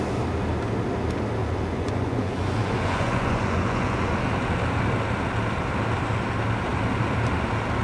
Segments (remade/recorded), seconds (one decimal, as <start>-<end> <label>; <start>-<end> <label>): 0.0-1.4 recorded; 1.4-4.1 remade; 4.1-7.8 recorded